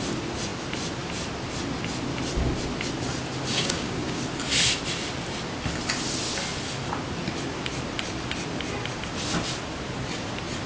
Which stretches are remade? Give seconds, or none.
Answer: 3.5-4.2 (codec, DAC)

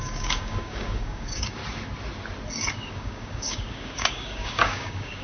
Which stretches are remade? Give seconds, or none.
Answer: 0.0-1.6 (codec, DAC); 2.7-5.2

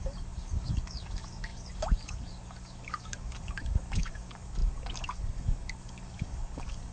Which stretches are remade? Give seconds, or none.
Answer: 0.0-6.9 (codec, DAC)